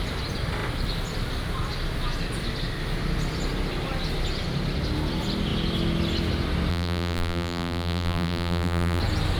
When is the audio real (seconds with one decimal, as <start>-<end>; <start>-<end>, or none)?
0.0-6.7; 9.0-9.4